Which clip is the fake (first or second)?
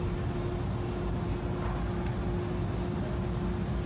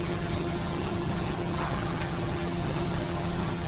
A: second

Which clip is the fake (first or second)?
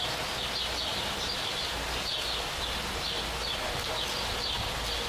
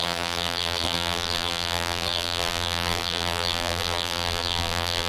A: second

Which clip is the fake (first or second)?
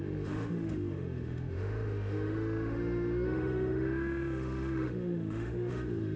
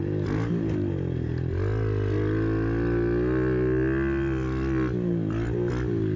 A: first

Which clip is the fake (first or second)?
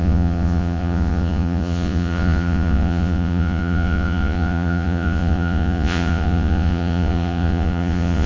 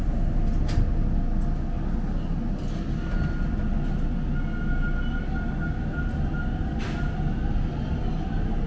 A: first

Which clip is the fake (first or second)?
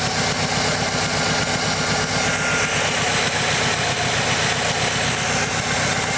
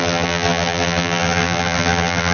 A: second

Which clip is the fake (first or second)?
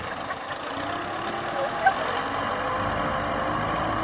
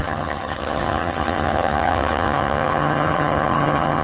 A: second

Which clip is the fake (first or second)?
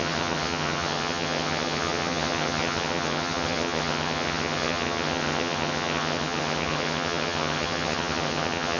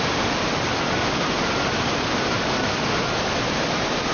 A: first